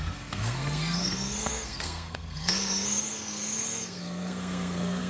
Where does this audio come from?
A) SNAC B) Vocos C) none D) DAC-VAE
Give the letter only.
A